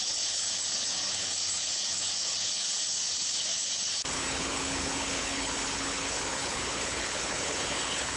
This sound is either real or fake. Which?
fake